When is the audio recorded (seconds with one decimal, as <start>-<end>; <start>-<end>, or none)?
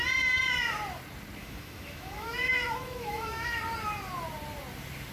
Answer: 0.0-1.4; 3.6-5.1